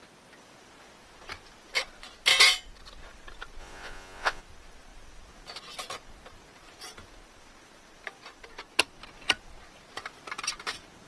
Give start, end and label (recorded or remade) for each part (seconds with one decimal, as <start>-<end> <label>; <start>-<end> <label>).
0.0-3.6 recorded; 3.6-4.4 remade; 4.4-11.1 recorded